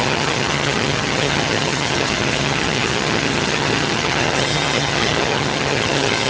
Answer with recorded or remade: remade